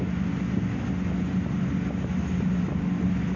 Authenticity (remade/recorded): recorded